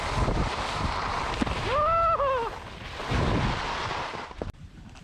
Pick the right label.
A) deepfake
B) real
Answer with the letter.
B